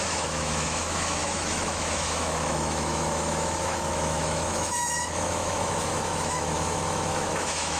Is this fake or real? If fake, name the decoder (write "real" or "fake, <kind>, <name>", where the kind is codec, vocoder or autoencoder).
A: fake, autoencoder, DAC-VAE